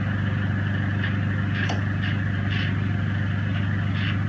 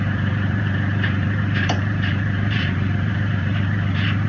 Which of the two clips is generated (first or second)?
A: second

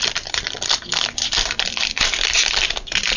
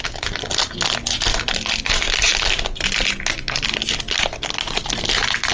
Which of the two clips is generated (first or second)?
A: first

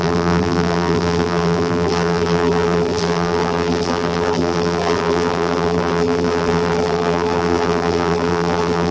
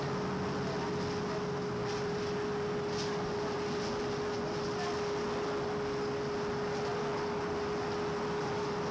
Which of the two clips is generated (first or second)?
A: first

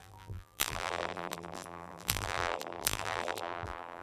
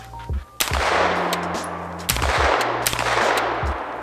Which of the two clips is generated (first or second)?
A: first